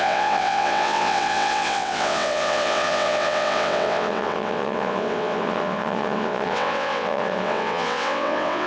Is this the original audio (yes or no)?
no